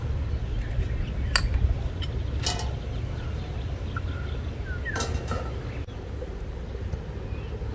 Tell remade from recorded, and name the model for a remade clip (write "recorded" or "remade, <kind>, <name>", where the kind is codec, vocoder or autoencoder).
recorded